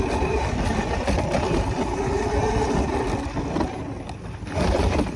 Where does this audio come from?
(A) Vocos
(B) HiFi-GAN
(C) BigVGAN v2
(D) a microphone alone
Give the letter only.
D